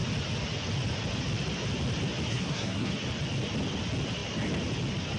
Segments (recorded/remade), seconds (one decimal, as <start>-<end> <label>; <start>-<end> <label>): 0.0-2.3 recorded; 2.3-2.9 remade; 2.9-5.2 recorded